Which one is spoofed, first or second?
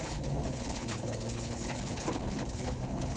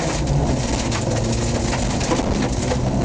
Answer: first